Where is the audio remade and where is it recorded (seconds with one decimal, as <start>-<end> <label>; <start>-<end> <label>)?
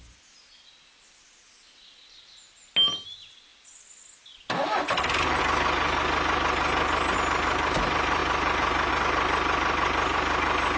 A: 0.0-10.8 recorded